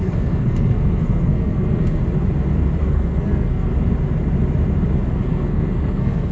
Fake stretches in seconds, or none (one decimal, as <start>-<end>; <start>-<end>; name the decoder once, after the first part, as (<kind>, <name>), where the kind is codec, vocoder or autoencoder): 0.0-2.0 (codec, SNAC); 2.8-3.7; 5.1-6.3